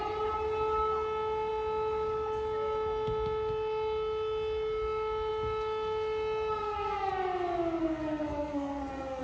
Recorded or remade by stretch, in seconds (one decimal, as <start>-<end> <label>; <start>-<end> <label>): 0.0-6.6 recorded; 6.6-7.1 remade; 7.1-7.8 recorded; 7.8-9.2 remade